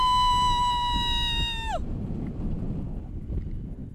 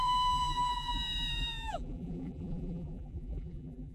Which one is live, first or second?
first